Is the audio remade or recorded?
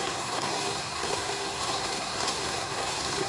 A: remade